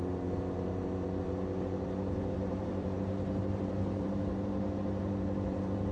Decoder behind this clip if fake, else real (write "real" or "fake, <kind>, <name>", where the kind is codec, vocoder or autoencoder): fake, vocoder, BigVGAN v2